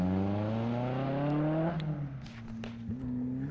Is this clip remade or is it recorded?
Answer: recorded